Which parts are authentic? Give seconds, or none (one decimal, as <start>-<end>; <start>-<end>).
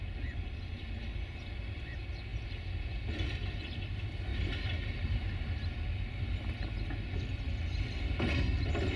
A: 0.0-4.3; 5.8-9.0